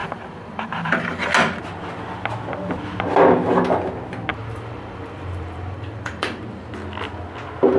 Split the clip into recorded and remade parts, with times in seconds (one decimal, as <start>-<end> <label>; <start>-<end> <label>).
0.0-1.3 remade; 1.3-4.3 recorded; 4.3-6.4 remade; 6.4-7.8 recorded